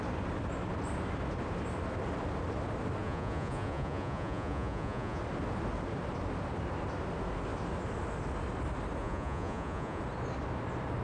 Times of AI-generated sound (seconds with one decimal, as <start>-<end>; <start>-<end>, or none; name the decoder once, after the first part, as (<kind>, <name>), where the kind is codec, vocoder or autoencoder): 3.0-5.2 (vocoder, Vocos); 9.0-10.0